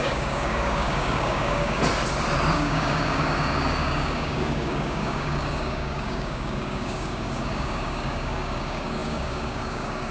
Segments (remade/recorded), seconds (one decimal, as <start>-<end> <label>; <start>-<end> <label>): 0.0-1.8 remade; 1.8-2.5 recorded; 2.5-10.1 remade